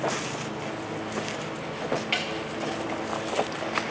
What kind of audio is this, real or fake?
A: real